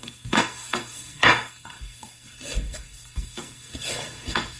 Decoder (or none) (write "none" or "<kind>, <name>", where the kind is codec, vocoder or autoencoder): codec, SNAC